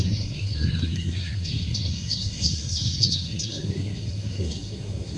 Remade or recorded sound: remade